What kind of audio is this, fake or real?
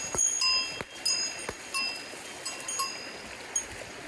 real